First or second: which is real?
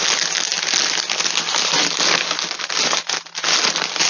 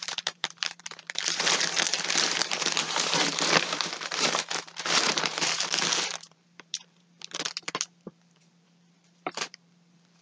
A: first